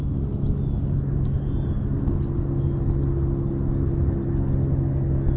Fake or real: real